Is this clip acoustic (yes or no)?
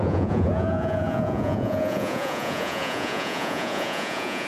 no